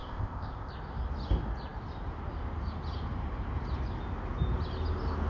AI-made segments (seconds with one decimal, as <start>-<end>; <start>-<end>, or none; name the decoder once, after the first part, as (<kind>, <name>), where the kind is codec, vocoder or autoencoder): 0.0-0.7 (codec, ZipCodec)